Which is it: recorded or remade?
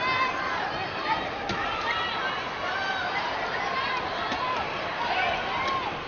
recorded